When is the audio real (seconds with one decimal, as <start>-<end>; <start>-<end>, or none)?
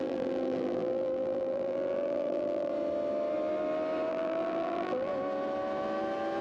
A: 2.7-4.1; 5.1-6.4